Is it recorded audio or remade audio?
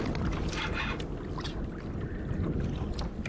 recorded